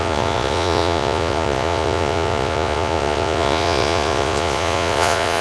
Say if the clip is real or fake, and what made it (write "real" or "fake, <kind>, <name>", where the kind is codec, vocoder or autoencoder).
fake, vocoder, Vocos